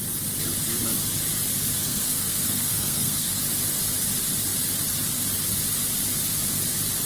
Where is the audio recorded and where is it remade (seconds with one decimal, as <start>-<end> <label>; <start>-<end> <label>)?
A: 0.0-1.8 recorded; 1.8-3.4 remade; 3.4-7.1 recorded